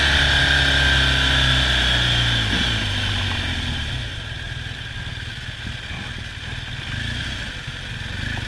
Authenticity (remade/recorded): recorded